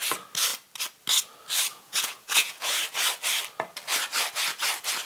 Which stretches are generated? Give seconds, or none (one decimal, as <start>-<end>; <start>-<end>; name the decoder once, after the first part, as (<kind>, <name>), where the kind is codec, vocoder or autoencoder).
1.7-2.8 (vocoder, Vocos)